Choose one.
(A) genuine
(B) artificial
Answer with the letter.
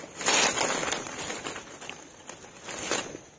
A